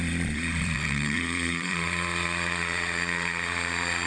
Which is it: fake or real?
fake